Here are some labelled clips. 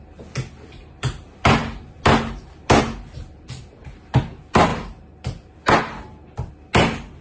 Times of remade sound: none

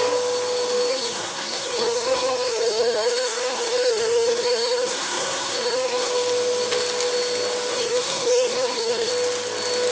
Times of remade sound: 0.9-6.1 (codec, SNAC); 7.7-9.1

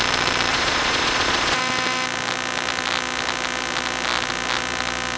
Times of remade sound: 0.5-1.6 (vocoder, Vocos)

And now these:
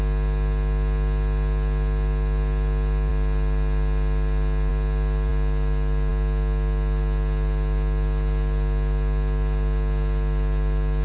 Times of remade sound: none